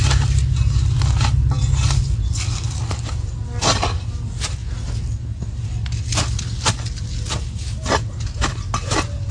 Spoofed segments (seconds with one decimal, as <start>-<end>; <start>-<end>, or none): none